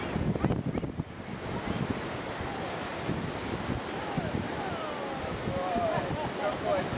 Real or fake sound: real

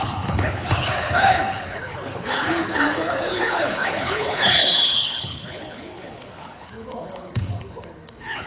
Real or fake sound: fake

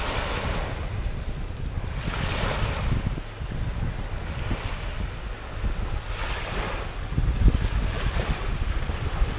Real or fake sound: real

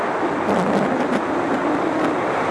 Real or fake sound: real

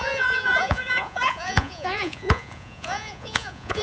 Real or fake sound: fake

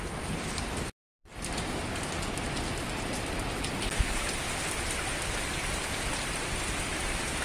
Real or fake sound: real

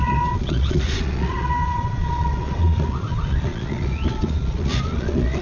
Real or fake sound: fake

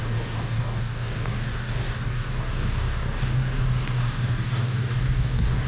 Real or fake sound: fake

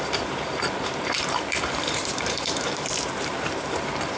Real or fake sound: fake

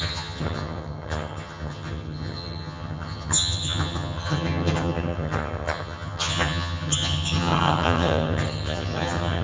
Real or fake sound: fake